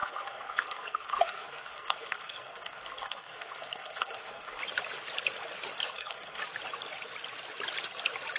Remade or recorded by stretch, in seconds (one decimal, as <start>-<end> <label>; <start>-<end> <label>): 0.0-4.6 remade; 4.6-5.9 recorded; 5.9-6.4 remade; 6.4-8.4 recorded